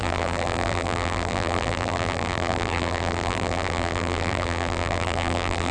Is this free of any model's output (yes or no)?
no